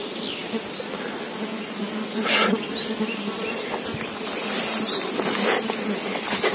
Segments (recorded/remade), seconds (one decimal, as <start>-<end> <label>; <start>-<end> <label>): 0.0-6.5 recorded